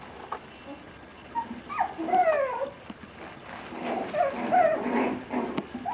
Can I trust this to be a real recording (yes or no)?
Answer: yes